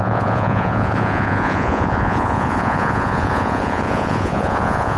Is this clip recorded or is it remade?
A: remade